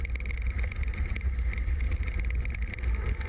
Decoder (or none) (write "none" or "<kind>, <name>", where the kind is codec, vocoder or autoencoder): none